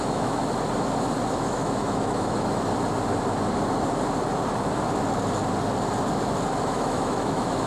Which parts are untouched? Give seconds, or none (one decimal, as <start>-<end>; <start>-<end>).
0.4-1.3; 2.7-6.6